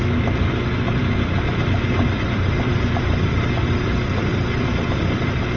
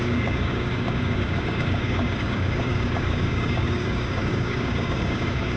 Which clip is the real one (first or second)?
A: first